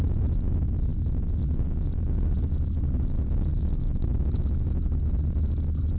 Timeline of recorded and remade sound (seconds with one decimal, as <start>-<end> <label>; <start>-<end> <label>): 0.0-6.0 recorded